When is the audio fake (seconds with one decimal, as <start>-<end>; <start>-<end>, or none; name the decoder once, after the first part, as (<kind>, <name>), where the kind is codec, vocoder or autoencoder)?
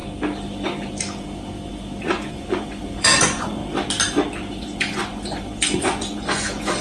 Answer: 2.0-3.6 (vocoder, Vocos); 4.5-6.8